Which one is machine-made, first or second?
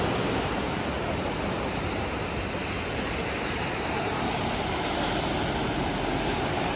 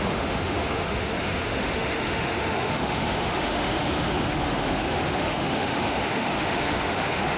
second